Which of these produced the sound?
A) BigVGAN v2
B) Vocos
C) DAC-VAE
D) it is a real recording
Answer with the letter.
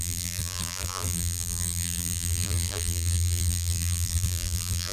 A